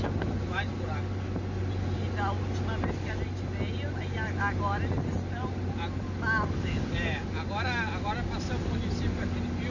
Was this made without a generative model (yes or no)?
yes